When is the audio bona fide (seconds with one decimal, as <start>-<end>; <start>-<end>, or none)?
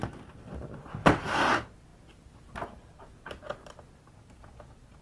0.0-5.0